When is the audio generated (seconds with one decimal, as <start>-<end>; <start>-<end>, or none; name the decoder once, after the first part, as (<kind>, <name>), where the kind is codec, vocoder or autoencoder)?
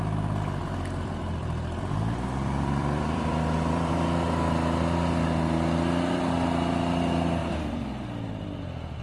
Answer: 0.6-3.9 (vocoder, BigVGAN v2); 7.4-8.6